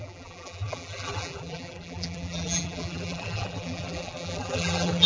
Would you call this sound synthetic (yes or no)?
yes